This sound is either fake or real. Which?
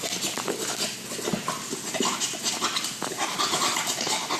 real